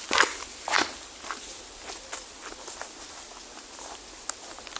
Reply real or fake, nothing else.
real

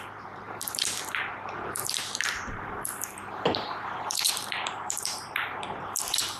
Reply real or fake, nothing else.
fake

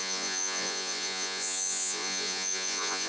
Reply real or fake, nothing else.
fake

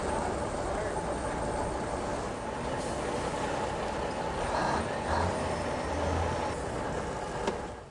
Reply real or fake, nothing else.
real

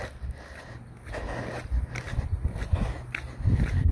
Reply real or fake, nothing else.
real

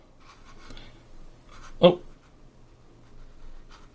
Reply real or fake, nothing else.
real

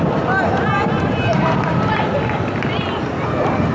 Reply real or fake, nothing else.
real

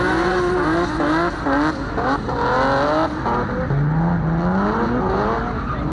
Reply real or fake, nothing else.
real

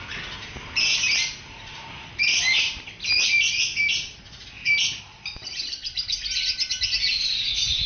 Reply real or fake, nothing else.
real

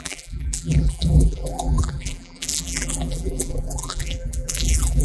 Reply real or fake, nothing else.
fake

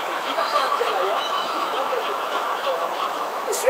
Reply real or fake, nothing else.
fake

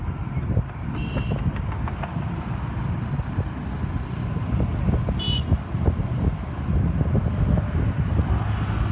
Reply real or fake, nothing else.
real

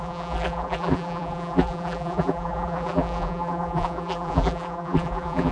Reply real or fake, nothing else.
fake